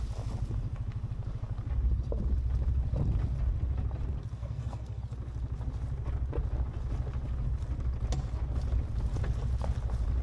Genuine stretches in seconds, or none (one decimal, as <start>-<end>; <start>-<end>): 0.0-4.4; 5.0-10.2